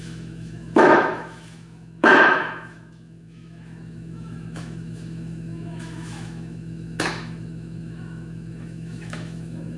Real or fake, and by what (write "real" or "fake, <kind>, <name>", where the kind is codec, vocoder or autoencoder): fake, autoencoder, DAC-VAE